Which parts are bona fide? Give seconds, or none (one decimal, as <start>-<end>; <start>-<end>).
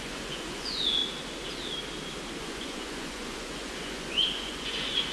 1.0-2.4